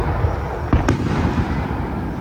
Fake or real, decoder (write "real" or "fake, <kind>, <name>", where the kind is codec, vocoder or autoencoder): real